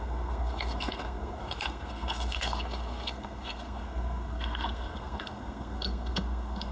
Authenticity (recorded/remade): remade